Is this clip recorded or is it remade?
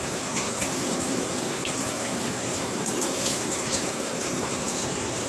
remade